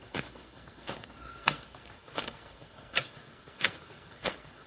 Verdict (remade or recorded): remade